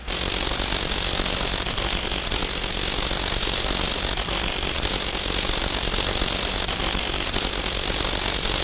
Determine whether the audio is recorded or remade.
remade